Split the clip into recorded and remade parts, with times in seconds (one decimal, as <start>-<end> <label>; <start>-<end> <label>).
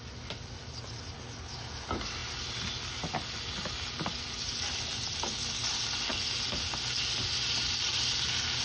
0.0-8.6 recorded